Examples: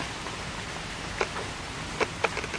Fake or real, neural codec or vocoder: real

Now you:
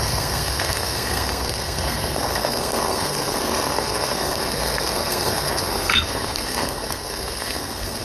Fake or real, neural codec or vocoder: fake, codec, SNAC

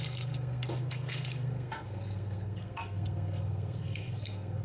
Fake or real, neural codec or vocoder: fake, codec, SNAC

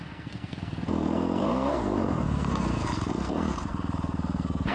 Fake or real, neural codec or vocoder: fake, codec, SNAC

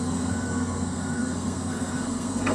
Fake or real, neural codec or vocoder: fake, codec, SNAC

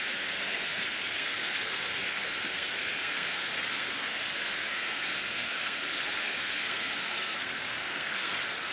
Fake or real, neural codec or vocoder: fake, codec, SNAC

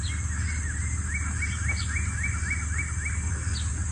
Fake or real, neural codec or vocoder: real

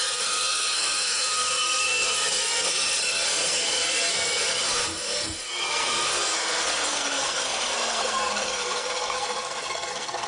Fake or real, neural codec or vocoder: fake, codec, SNAC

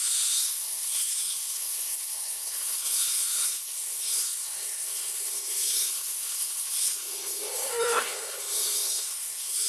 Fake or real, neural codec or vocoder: fake, codec, SNAC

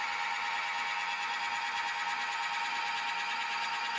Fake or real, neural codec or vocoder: real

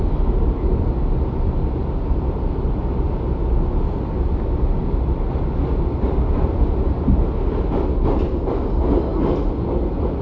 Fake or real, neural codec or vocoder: real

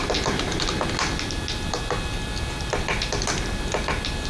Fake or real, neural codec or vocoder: real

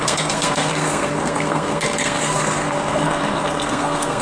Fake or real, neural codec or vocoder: fake, codec, SNAC